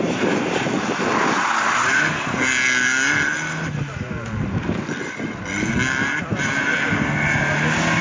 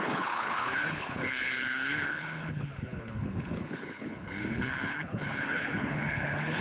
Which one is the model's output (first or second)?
second